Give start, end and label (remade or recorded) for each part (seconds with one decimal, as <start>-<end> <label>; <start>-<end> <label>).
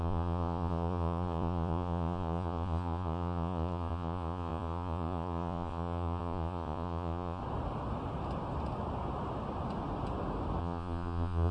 0.0-7.4 remade; 7.4-10.6 recorded; 10.6-11.5 remade